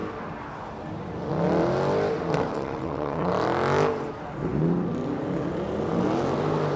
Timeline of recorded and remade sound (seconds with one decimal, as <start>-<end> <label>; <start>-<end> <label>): 0.0-2.5 recorded; 2.5-3.3 remade; 3.3-6.8 recorded